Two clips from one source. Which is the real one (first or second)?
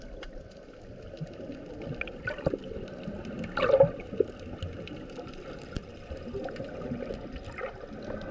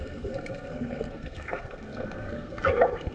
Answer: first